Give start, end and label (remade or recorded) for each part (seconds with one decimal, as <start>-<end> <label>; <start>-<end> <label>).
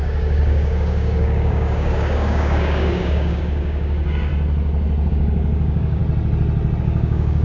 0.0-4.3 remade; 4.3-5.1 recorded; 5.1-6.0 remade; 6.0-6.8 recorded; 6.8-7.4 remade